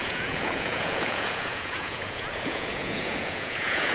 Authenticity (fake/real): fake